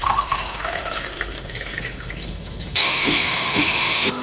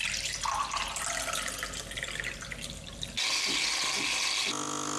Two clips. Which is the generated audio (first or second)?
first